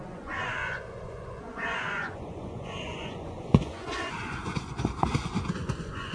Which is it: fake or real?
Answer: fake